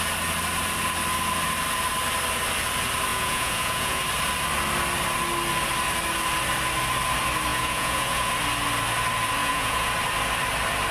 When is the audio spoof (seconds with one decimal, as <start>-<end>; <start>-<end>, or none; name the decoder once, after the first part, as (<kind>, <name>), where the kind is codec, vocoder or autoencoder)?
3.1-4.0 (vocoder, Vocos); 7.5-8.3; 9.4-9.9

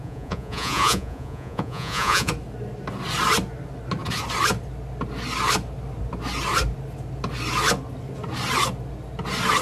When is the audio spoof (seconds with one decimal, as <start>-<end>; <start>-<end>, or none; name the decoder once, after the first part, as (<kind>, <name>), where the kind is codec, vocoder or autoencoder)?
0.0-2.3 (vocoder, Vocos)

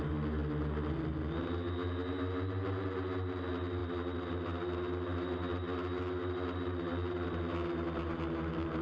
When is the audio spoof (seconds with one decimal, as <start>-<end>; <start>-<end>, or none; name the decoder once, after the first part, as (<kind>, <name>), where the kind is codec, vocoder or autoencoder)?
none

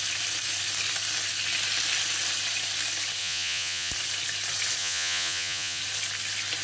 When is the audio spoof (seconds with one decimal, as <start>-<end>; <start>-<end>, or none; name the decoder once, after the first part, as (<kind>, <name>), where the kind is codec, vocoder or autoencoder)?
3.2-3.9 (vocoder, Vocos); 4.8-5.8

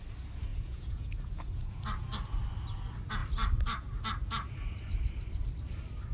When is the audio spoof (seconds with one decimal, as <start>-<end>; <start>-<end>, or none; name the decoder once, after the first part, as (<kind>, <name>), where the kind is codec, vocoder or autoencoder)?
0.5-1.8 (vocoder, Vocos)

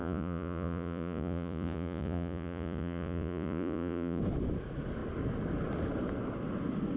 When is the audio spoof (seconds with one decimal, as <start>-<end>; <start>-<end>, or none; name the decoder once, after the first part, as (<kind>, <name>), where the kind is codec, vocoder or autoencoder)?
0.0-4.2 (vocoder, Vocos)

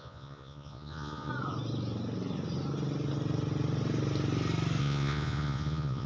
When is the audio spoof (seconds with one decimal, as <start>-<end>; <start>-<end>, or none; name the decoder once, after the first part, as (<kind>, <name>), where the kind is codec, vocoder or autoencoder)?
0.0-1.3 (vocoder, Vocos); 4.8-6.1

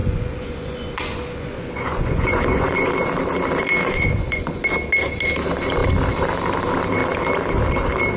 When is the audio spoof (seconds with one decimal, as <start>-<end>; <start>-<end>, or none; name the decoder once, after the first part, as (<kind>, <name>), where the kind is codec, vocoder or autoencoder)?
0.0-2.9 (vocoder, Vocos); 3.8-4.6